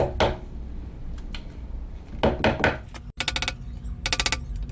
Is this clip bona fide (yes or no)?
yes